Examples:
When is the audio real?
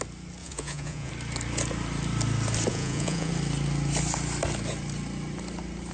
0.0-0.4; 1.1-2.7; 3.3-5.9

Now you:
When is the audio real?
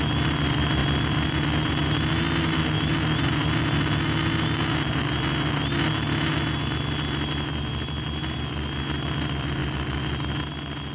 0.0-10.9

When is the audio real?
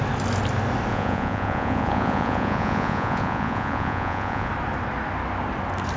0.0-0.9; 4.5-6.0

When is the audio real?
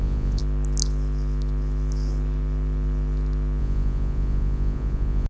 0.4-3.6